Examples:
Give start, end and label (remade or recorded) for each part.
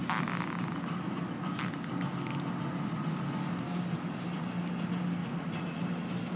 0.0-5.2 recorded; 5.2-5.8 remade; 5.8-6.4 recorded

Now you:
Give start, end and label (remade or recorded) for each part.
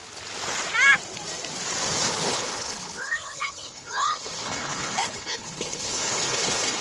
0.0-2.3 recorded; 2.3-6.8 remade